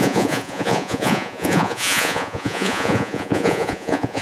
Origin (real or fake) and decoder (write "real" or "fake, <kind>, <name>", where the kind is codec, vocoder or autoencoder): fake, vocoder, Vocos